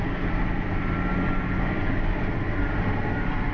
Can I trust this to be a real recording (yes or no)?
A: yes